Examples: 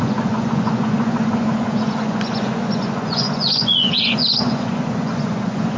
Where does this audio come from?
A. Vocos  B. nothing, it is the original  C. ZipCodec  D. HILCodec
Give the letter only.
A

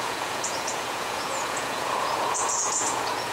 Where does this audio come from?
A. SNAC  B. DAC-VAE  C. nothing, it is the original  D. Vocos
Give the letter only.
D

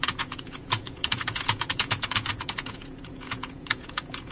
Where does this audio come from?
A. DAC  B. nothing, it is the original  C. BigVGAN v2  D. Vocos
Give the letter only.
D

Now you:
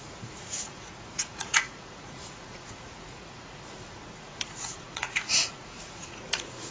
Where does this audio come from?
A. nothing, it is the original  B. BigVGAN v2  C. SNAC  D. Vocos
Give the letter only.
D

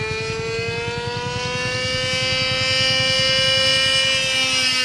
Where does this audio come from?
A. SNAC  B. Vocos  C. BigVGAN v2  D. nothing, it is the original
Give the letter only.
D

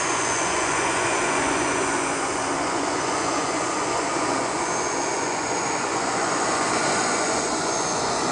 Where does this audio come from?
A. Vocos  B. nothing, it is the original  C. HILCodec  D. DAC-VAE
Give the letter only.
A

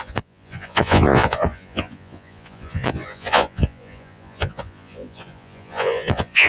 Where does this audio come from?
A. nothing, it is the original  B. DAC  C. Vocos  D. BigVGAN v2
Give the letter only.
C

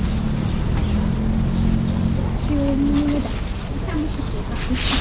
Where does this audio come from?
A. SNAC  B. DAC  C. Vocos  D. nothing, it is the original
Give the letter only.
D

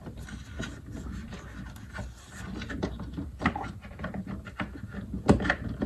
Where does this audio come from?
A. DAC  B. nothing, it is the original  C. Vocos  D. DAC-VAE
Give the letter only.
B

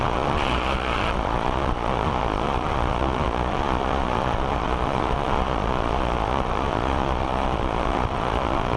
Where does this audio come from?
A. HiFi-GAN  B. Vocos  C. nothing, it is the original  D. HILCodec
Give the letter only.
B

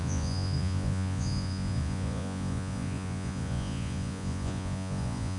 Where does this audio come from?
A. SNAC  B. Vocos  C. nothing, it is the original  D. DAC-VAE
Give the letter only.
B